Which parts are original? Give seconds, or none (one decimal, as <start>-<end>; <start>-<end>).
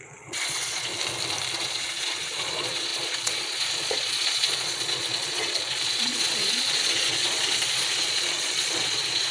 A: 0.9-1.5